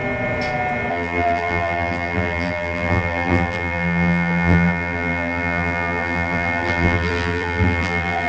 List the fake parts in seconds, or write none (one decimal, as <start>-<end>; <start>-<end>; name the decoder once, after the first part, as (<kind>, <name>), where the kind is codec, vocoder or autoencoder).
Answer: 0.9-8.3 (vocoder, BigVGAN v2)